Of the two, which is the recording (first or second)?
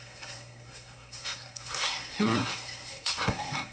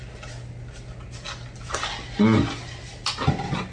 second